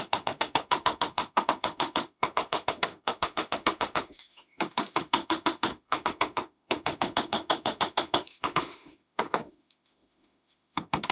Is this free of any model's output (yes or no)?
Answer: no